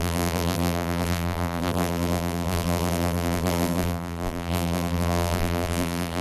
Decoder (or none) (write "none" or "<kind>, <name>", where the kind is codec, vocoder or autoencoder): vocoder, BigVGAN v2